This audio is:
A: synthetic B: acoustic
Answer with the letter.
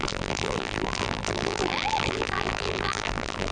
A